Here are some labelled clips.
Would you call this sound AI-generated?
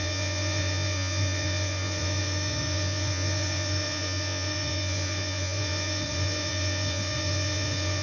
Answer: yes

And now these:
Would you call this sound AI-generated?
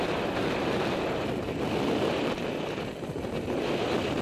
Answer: no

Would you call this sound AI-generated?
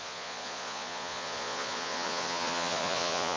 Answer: yes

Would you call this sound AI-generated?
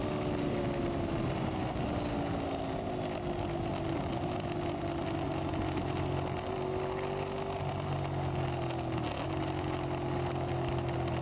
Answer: no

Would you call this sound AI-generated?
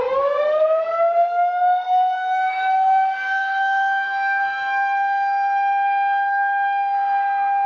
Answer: yes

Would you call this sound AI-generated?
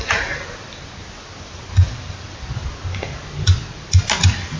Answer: no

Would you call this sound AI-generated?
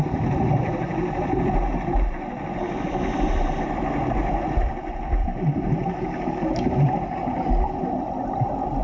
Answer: no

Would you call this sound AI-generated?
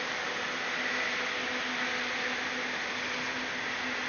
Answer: no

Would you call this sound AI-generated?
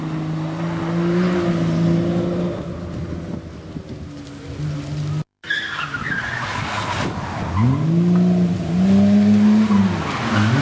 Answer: no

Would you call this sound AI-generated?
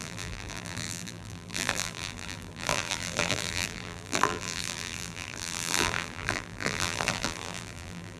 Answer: yes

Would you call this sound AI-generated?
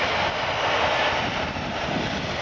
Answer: no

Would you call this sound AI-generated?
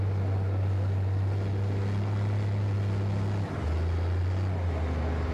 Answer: no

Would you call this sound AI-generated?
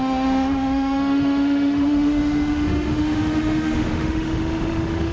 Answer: yes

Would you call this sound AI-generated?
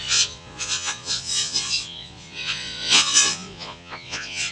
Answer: yes